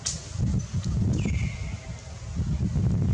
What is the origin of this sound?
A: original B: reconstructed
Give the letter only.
A